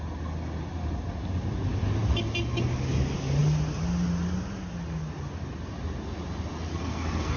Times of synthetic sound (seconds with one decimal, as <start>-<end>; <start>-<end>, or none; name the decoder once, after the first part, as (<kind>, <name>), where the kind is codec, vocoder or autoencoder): 6.7-7.4 (codec, SNAC)